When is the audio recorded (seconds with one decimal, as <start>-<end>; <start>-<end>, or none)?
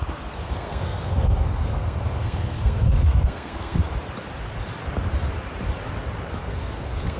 3.8-6.4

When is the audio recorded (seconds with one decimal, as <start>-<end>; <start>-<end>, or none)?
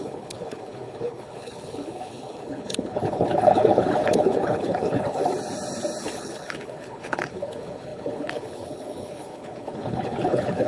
5.2-6.0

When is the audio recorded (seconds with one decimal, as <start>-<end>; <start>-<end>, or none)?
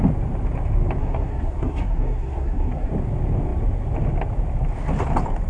0.0-1.0; 2.9-5.5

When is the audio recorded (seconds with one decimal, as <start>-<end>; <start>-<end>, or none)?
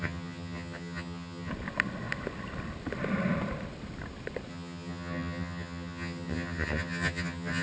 1.5-4.5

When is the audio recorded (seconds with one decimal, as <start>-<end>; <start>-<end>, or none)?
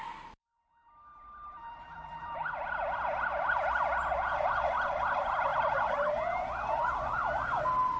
0.0-1.6; 2.4-5.5; 6.1-8.0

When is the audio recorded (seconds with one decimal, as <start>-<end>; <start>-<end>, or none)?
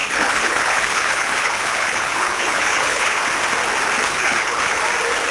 3.2-4.0; 4.8-5.3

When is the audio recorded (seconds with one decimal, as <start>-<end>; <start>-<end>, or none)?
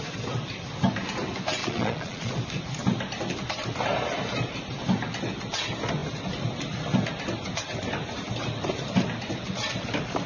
0.0-1.6; 2.3-10.3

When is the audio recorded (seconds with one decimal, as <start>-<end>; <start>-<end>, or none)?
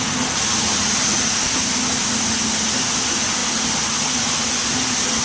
0.0-5.2